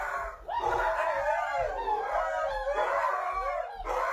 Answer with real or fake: real